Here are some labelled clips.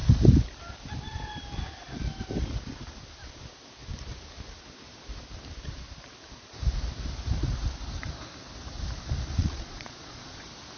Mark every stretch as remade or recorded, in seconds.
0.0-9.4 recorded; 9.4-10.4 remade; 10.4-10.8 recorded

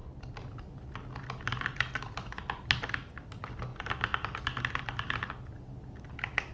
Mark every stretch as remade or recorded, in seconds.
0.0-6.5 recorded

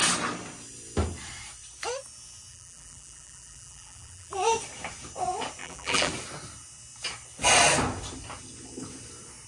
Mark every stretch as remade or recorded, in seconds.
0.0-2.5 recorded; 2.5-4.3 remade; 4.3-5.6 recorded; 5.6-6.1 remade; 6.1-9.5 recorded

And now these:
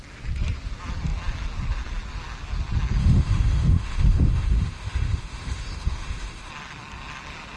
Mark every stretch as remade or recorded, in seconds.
0.0-3.0 recorded; 3.0-6.5 remade; 6.5-7.6 recorded